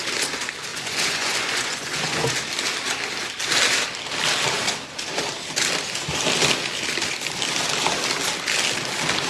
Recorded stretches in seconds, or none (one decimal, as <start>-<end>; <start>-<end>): 0.0-0.7; 2.3-9.3